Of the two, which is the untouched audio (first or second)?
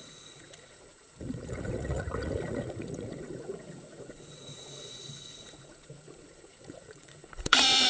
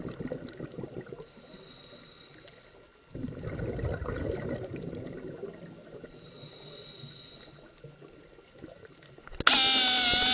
second